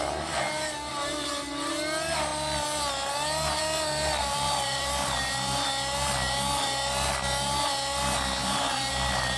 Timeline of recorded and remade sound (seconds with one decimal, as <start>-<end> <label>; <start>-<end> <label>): 0.0-0.9 recorded; 0.9-1.7 remade; 1.7-4.2 recorded; 4.2-5.2 remade; 5.2-8.4 recorded; 8.4-8.9 remade; 8.9-9.4 recorded